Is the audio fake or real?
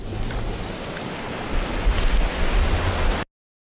real